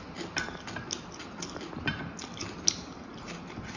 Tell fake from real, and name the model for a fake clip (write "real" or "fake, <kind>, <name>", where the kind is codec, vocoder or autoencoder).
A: real